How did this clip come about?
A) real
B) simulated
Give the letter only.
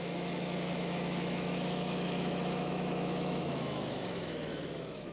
B